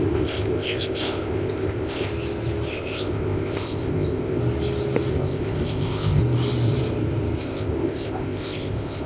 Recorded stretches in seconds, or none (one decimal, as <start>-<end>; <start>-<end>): 2.1-2.7; 4.4-5.1; 6.2-7.4